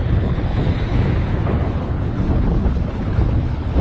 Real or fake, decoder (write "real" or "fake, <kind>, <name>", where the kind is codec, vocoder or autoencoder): fake, codec, HILCodec